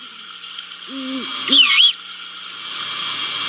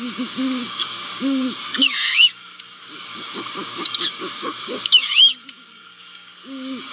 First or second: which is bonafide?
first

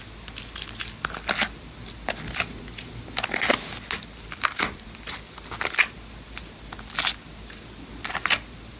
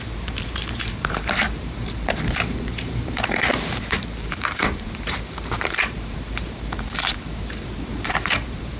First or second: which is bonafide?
first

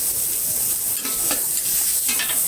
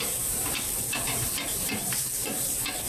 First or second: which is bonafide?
first